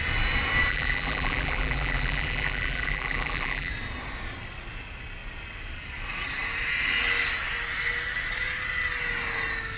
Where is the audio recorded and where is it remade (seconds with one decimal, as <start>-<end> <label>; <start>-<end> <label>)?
0.0-0.7 recorded; 0.7-3.7 remade; 3.7-9.8 recorded